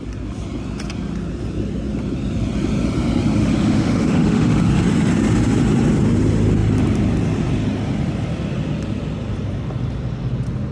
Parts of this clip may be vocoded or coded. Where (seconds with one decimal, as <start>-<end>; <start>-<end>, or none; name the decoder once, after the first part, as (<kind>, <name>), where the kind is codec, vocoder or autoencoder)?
3.4-4.7 (autoencoder, DAC-VAE)